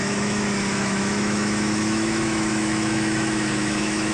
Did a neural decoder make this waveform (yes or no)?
yes